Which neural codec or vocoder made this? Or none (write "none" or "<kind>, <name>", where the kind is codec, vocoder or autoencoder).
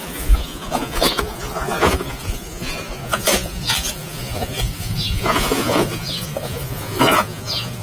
vocoder, Vocos